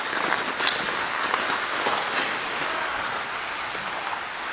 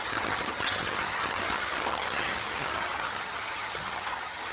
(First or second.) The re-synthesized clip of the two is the second